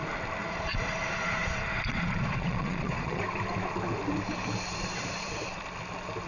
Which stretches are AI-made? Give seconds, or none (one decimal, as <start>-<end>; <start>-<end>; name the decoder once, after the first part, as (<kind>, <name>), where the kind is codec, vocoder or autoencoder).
0.4-3.2 (vocoder, Vocos); 4.7-5.6